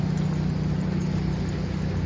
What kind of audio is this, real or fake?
real